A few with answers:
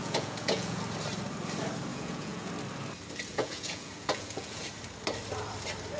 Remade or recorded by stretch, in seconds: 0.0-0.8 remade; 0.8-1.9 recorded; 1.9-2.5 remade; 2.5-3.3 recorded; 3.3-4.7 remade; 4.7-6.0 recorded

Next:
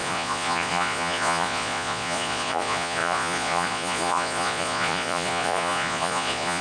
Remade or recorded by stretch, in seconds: 0.0-6.6 remade

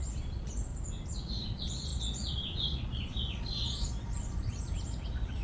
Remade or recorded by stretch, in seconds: 0.0-0.7 remade; 0.7-1.3 recorded; 1.3-5.4 remade

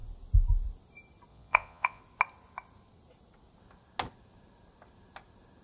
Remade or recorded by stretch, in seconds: 0.0-1.3 recorded; 1.3-2.0 remade; 2.0-5.6 recorded

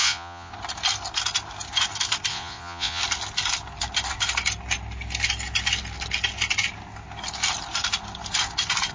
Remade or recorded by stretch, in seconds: 0.0-0.5 remade; 0.5-2.3 recorded; 2.3-3.0 remade; 3.0-8.9 recorded

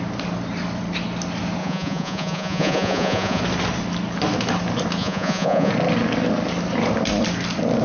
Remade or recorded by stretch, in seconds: 0.0-1.6 recorded; 1.6-3.4 remade; 3.4-5.0 recorded; 5.0-5.7 remade; 5.7-7.8 recorded